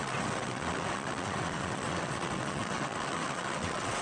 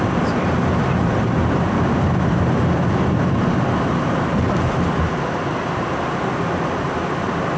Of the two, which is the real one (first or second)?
second